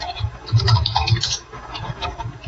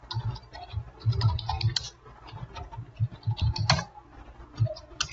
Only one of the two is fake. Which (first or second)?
first